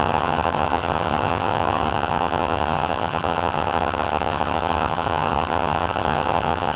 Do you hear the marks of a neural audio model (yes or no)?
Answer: yes